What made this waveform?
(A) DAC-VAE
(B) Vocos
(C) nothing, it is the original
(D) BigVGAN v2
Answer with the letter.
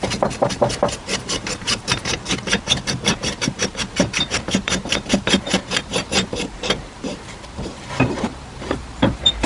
D